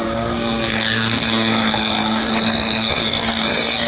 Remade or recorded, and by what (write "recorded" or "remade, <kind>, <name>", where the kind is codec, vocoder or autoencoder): remade, codec, SNAC